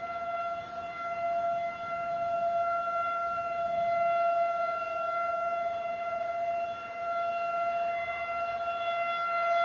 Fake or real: fake